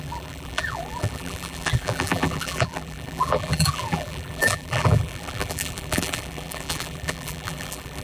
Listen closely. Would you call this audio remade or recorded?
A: remade